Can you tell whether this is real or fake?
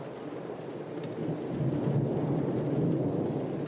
real